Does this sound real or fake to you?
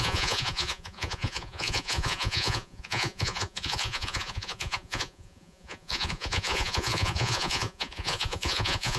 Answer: fake